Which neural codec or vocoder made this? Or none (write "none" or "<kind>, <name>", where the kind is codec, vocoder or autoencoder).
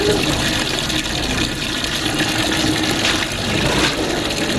none